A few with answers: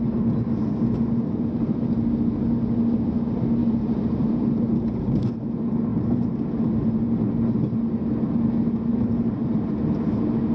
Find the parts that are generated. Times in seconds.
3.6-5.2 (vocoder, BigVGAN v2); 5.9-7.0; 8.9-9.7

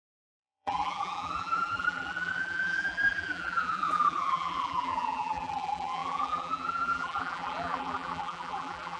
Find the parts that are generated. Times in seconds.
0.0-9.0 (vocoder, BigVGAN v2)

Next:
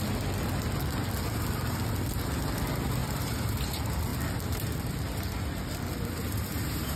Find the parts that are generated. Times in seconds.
3.0-3.6 (vocoder, BigVGAN v2); 6.5-7.0

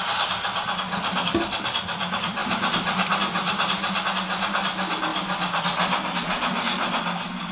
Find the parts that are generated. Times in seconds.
2.4-4.0 (vocoder, BigVGAN v2); 5.1-5.6

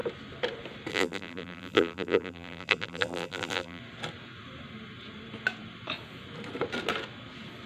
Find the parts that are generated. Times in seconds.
0.9-3.8 (vocoder, BigVGAN v2)